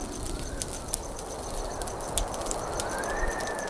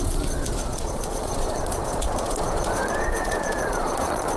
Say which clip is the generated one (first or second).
second